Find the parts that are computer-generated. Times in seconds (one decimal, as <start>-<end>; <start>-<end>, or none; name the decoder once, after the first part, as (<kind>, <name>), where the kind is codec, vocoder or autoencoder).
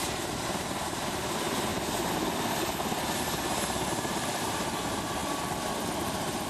0.0-1.7 (vocoder, BigVGAN v2); 3.9-6.5